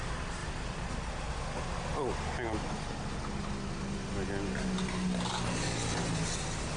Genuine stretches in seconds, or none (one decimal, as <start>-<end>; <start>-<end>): 0.0-0.4; 0.9-6.8